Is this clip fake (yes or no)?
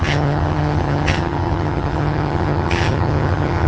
yes